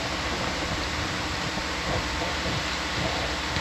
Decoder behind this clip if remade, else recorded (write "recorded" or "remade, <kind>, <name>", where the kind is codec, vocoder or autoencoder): recorded